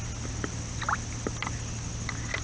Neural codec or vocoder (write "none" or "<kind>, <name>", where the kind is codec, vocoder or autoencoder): none